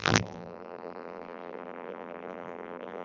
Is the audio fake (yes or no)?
yes